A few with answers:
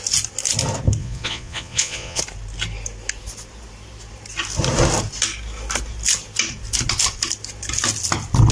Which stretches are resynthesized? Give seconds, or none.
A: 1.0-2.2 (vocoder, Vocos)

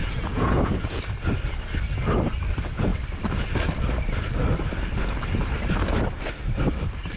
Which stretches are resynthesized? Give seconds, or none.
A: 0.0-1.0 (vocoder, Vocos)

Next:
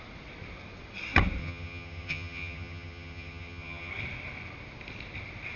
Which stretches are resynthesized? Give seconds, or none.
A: 1.4-3.9 (vocoder, HiFi-GAN)

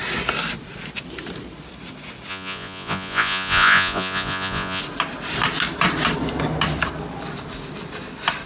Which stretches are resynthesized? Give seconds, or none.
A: 2.3-4.8 (vocoder, Vocos)